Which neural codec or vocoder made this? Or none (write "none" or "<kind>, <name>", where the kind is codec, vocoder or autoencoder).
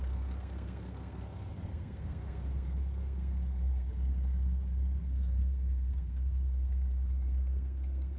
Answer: codec, SNAC